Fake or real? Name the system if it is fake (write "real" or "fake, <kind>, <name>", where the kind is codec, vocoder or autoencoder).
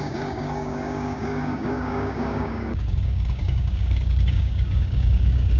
fake, codec, DAC